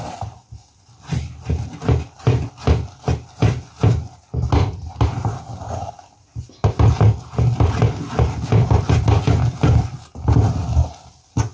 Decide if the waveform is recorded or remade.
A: recorded